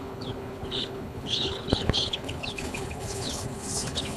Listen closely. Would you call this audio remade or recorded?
remade